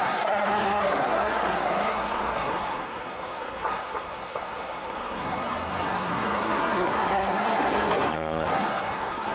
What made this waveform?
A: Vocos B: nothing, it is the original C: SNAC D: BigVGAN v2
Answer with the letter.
C